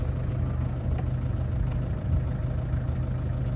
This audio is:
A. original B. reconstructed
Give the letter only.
A